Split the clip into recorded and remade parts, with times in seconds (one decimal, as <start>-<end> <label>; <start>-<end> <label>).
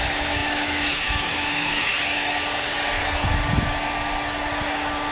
0.0-1.9 remade; 1.9-5.1 recorded